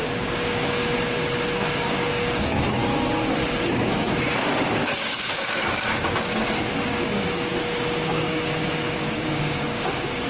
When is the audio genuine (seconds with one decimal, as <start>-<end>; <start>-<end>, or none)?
2.8-3.7